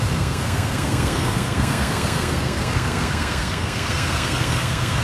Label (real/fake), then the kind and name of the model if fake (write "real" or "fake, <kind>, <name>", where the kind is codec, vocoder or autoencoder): fake, codec, SNAC